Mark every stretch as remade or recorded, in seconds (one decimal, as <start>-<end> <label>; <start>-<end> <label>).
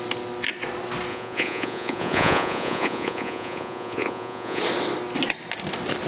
0.0-1.1 recorded; 1.1-4.6 remade; 4.6-6.1 recorded